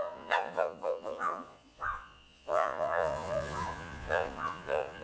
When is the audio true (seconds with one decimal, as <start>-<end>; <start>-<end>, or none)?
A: none